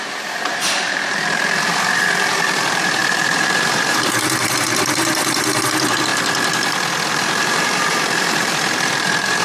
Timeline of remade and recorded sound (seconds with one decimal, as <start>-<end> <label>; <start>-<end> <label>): 0.0-6.1 remade; 6.1-7.1 recorded; 7.1-9.4 remade